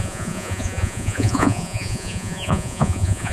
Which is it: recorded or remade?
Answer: remade